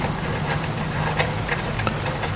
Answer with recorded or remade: recorded